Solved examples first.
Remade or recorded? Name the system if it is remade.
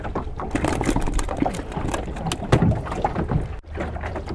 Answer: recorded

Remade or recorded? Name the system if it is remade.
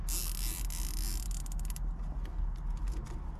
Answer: recorded